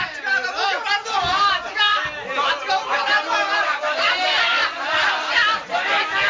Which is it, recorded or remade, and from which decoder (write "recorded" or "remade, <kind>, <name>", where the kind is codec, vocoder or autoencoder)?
recorded